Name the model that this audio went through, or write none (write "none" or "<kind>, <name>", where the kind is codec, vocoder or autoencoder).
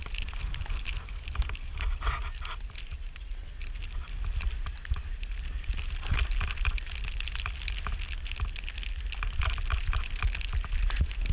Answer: none